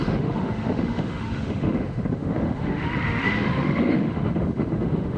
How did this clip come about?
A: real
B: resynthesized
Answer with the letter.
B